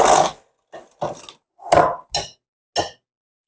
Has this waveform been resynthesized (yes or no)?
no